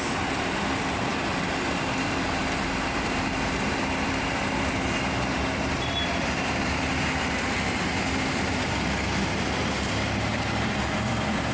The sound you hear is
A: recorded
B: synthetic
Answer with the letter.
B